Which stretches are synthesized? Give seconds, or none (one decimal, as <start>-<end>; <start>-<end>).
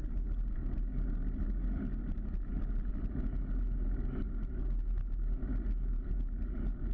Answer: none